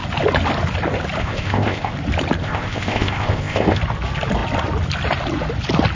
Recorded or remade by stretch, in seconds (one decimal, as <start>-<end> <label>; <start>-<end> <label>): 0.0-1.2 recorded; 1.2-1.9 remade; 1.9-2.4 recorded; 2.4-3.8 remade; 3.8-6.0 recorded

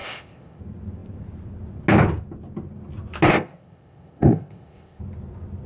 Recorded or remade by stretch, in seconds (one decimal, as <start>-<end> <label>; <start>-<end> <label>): 0.0-0.6 remade; 0.6-3.3 recorded; 3.3-5.0 remade; 5.0-5.7 recorded

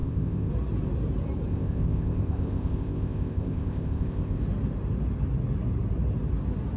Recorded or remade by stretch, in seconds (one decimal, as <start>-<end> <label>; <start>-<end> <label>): 0.0-0.5 remade; 0.5-1.5 recorded; 1.5-4.4 remade; 4.4-6.8 recorded